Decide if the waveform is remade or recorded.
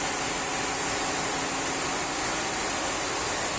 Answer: recorded